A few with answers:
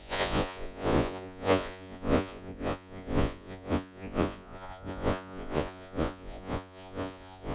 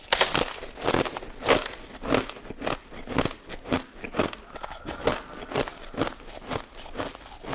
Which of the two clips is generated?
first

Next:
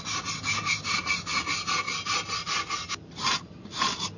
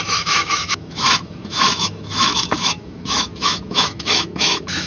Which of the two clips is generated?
second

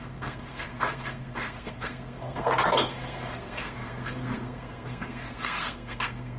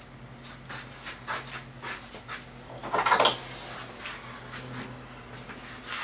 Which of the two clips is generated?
first